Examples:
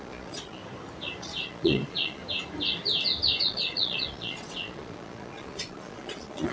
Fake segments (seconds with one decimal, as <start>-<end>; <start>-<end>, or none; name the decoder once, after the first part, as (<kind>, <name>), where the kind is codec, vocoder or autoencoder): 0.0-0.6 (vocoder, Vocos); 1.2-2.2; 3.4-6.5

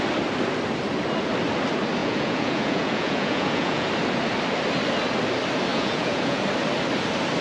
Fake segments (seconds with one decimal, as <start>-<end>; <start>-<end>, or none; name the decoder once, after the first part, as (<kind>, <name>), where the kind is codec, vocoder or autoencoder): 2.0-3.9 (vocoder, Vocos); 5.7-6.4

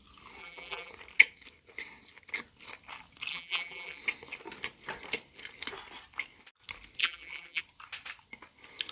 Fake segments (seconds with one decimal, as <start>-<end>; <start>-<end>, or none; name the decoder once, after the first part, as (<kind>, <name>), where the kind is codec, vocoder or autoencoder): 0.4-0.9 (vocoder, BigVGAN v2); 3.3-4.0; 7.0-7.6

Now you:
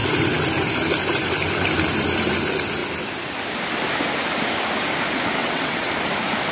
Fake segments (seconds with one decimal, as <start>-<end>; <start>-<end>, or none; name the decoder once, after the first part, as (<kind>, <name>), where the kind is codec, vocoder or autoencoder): 5.4-5.9 (vocoder, WaveNeXt)

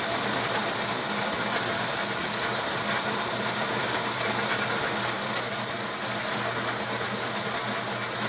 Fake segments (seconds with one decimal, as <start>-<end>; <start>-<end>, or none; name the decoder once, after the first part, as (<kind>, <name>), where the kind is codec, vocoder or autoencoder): none

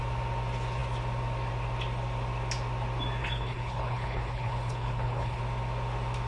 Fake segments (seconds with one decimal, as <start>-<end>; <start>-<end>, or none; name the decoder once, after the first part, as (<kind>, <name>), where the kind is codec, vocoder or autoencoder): 3.2-5.4 (codec, HILCodec)